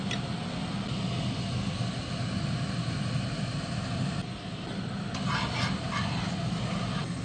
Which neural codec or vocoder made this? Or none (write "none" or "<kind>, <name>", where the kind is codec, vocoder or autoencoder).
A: none